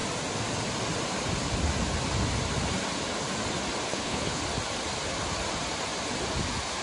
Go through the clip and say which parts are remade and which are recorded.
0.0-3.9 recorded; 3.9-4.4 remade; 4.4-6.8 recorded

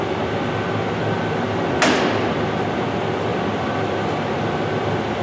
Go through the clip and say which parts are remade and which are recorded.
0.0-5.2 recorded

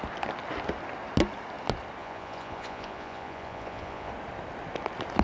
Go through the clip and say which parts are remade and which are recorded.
0.0-2.0 recorded; 2.0-4.1 remade; 4.1-5.2 recorded

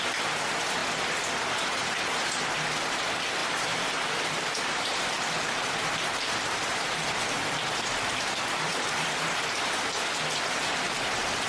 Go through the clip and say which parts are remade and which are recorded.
0.0-3.4 recorded; 3.4-7.2 remade; 7.2-8.7 recorded; 8.7-9.7 remade; 9.7-11.5 recorded

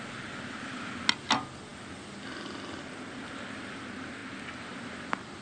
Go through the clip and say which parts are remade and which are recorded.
0.0-5.4 recorded

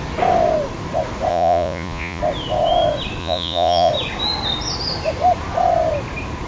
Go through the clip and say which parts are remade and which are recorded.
0.0-1.3 recorded; 1.3-2.2 remade; 2.2-3.2 recorded; 3.2-3.9 remade; 3.9-6.5 recorded

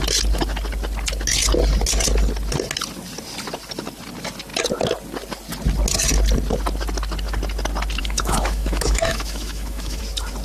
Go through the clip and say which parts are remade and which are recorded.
0.0-8.0 recorded; 8.0-10.0 remade; 10.0-10.4 recorded